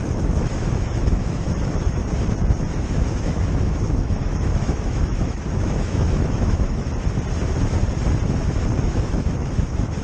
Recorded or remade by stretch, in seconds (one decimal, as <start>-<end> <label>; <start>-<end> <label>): 0.0-2.0 remade; 2.0-2.7 recorded; 2.7-6.9 remade; 6.9-8.8 recorded; 8.8-10.0 remade